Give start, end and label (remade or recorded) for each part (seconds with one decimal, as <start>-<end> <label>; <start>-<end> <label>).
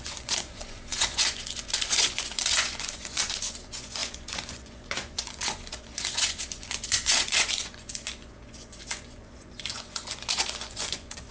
0.0-11.3 remade